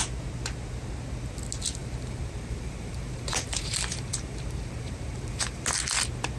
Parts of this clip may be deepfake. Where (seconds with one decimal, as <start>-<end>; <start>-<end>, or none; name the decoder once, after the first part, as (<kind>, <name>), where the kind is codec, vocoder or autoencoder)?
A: 1.8-5.6 (vocoder, BigVGAN v2)